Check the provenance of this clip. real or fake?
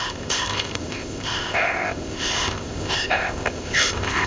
fake